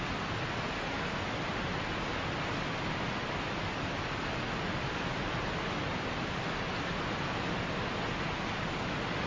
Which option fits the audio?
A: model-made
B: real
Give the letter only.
B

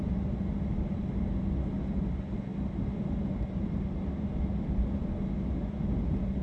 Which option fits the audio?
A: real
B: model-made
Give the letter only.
A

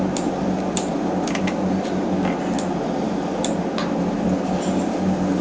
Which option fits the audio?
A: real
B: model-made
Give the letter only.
A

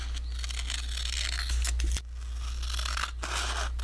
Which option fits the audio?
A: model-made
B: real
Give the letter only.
B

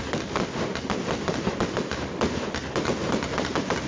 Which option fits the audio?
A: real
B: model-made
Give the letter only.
A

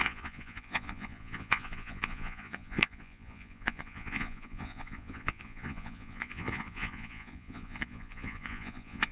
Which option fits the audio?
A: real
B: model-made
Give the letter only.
B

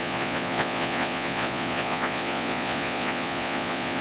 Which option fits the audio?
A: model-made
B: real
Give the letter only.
A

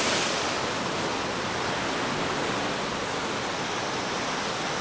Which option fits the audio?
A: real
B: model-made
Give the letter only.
A